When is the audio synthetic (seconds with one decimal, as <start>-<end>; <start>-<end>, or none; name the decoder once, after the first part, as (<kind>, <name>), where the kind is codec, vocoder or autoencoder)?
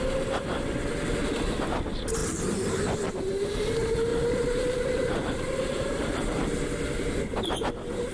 2.2-3.1 (vocoder, BigVGAN v2); 4.1-6.5